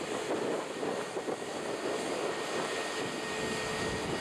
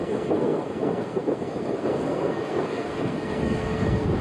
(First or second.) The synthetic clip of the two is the second